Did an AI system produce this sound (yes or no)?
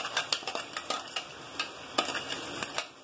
no